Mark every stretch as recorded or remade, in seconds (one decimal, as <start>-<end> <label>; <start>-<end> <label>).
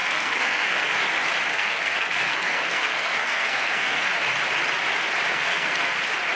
0.0-1.0 remade; 1.0-1.5 recorded; 1.5-4.1 remade; 4.1-5.3 recorded; 5.3-6.0 remade; 6.0-6.4 recorded